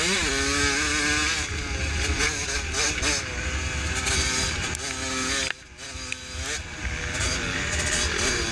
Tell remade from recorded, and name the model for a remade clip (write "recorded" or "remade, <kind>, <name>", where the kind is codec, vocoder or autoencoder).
recorded